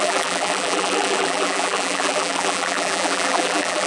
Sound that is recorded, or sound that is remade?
remade